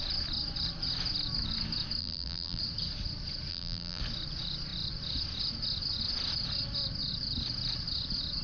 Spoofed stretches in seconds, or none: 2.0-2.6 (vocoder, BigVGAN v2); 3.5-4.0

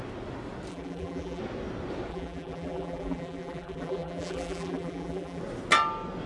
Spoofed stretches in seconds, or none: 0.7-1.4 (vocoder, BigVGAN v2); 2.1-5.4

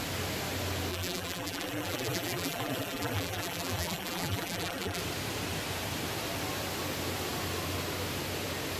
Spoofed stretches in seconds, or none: 0.9-5.0 (vocoder, BigVGAN v2)

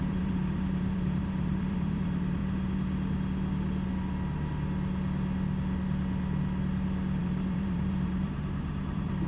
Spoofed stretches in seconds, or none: 0.0-2.4 (vocoder, BigVGAN v2); 7.2-9.3

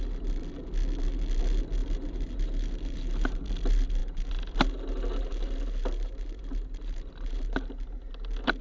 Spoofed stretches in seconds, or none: 1.8-3.4 (vocoder, BigVGAN v2); 4.0-7.9

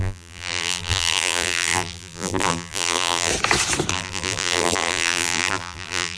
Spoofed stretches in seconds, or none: 0.0-3.3 (vocoder, BigVGAN v2); 3.9-6.2

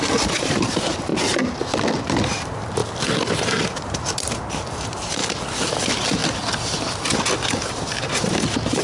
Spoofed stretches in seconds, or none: 0.0-1.1 (vocoder, BigVGAN v2); 2.0-2.8; 3.6-5.2; 5.8-6.2; 7.7-8.8